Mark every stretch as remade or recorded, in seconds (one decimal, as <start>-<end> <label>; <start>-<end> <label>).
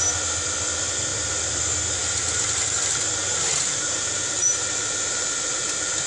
0.0-1.1 recorded; 1.1-1.6 remade; 1.6-3.1 recorded; 3.1-6.1 remade